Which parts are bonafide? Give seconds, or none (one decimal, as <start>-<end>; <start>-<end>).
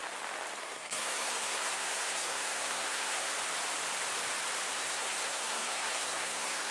0.0-0.6; 3.3-4.7